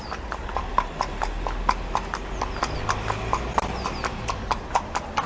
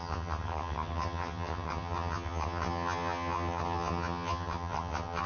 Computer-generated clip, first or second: second